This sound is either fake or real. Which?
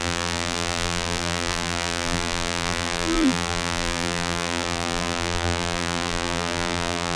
fake